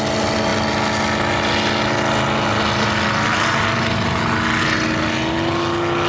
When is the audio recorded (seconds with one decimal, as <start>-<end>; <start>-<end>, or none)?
0.0-6.1